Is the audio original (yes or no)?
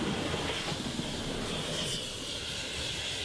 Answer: yes